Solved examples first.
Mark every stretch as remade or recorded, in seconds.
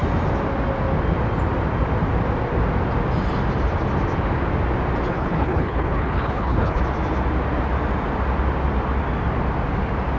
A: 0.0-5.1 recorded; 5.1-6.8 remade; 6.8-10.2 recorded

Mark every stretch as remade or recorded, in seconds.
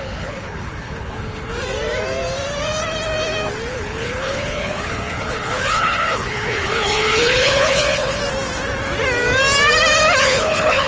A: 0.0-1.5 remade; 1.5-3.7 recorded; 3.7-8.2 remade; 8.2-10.2 recorded; 10.2-10.9 remade